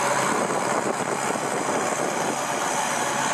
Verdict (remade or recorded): recorded